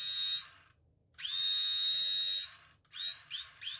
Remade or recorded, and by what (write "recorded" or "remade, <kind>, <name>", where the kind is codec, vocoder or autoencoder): recorded